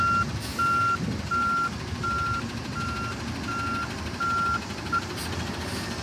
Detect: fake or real real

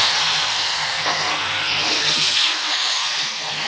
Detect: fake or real fake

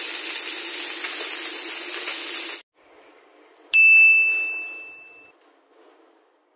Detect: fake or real real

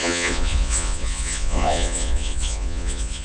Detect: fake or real fake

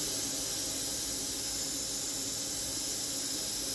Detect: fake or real real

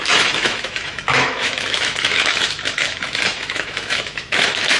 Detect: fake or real fake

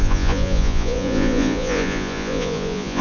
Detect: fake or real fake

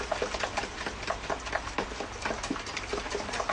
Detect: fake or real real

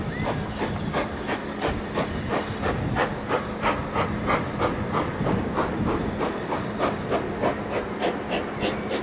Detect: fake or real real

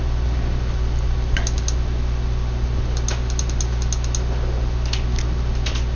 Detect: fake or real real